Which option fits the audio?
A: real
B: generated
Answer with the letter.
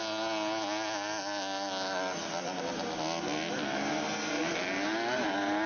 A